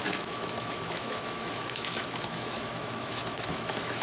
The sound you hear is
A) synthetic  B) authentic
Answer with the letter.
A